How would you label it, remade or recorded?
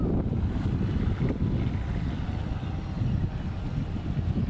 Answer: recorded